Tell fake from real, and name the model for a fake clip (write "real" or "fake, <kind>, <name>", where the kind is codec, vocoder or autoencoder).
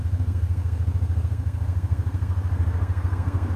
fake, codec, SNAC